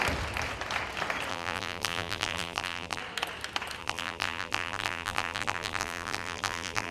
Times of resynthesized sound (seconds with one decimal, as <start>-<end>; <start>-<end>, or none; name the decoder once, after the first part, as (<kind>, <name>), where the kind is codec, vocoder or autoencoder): 1.3-3.0 (vocoder, BigVGAN v2); 3.8-6.9